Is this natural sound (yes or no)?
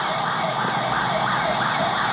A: yes